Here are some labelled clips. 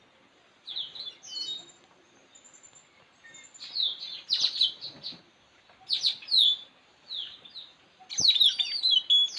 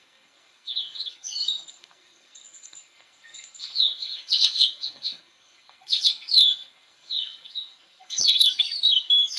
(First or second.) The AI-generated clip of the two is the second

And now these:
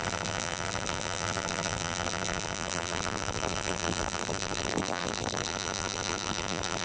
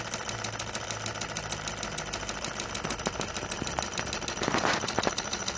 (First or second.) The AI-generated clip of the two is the first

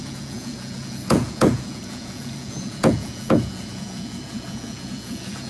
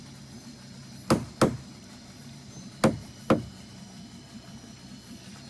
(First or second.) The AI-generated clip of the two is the first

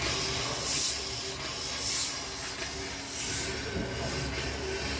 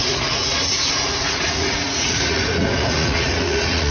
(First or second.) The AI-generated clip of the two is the second